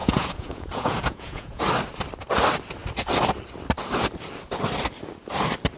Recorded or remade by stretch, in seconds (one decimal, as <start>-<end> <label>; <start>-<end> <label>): 0.0-1.6 remade; 1.6-5.8 recorded